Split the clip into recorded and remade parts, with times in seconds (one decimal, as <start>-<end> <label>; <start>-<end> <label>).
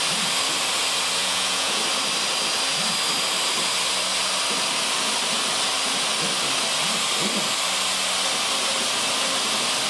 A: 0.0-1.2 recorded; 1.2-1.8 remade; 1.8-9.9 recorded